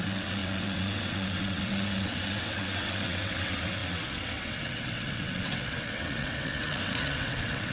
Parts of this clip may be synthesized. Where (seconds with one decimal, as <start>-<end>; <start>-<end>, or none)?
0.0-7.7